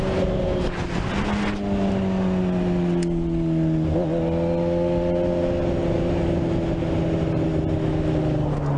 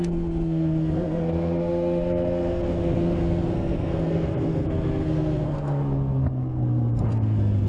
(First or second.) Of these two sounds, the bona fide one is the first